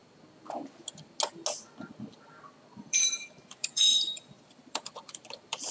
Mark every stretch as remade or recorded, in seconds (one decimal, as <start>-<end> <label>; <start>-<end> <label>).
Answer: 0.0-2.8 recorded; 2.8-5.7 remade